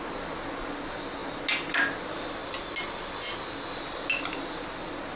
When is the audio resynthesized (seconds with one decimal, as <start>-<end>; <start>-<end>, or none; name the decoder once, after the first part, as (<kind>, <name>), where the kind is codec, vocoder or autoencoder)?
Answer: none